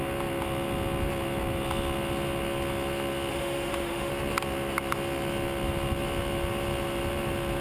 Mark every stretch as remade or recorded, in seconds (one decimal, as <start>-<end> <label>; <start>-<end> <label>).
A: 0.0-3.3 recorded; 3.3-4.1 remade; 4.1-7.6 recorded